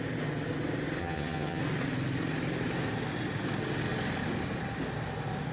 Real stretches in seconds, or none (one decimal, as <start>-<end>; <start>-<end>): 0.0-1.0; 1.6-5.5